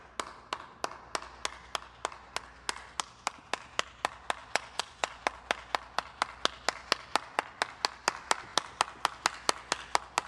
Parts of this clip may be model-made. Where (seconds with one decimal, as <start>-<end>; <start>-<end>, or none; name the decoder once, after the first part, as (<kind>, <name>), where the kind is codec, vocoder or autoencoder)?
4.4-5.2 (vocoder, Vocos)